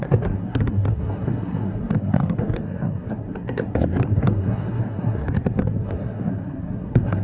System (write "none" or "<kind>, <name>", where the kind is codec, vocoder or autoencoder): codec, SNAC